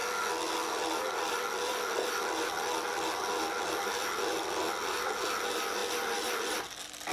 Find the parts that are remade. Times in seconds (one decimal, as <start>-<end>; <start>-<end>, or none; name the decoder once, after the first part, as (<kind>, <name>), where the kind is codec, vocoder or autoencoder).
none